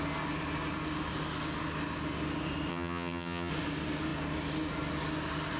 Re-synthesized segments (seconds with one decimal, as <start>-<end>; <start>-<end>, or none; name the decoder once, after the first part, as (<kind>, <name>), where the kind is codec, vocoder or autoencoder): 2.7-3.5 (vocoder, HiFi-GAN)